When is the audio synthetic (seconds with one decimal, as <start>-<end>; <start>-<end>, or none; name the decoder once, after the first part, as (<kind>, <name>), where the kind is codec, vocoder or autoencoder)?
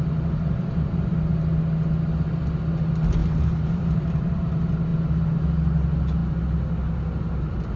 3.2-4.4 (vocoder, BigVGAN v2)